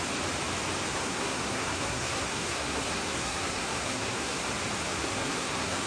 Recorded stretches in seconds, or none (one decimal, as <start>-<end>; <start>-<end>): 0.0-0.9; 4.4-5.0